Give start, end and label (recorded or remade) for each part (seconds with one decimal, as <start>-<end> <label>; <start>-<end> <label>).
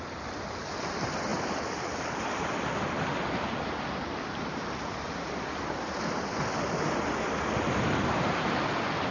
0.0-9.1 recorded